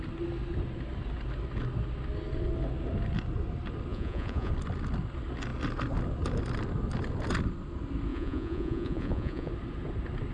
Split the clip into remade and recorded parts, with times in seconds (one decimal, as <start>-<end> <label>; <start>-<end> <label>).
0.0-3.9 recorded; 3.9-4.5 remade; 4.5-8.1 recorded; 8.1-9.5 remade; 9.5-10.3 recorded